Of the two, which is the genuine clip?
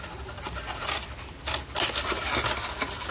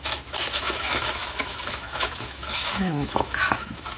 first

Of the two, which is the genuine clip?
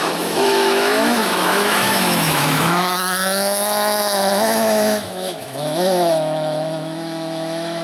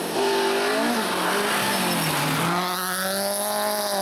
second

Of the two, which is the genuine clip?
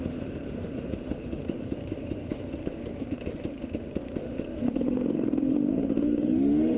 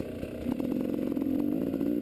second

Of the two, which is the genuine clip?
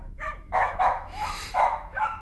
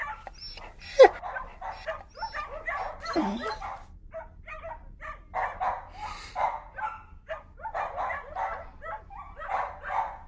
second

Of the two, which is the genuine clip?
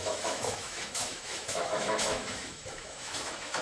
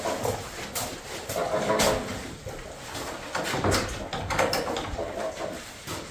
second